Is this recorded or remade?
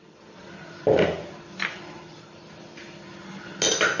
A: recorded